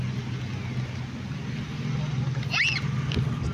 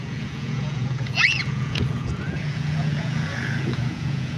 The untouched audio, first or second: first